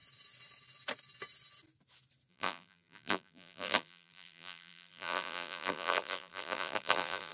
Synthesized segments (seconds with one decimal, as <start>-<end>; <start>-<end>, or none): 2.3-7.3